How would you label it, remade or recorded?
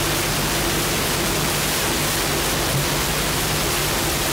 recorded